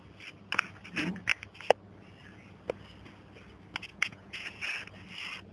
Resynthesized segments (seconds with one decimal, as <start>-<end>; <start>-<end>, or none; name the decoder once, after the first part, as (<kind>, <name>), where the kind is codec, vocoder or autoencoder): 3.9-4.6 (vocoder, Vocos)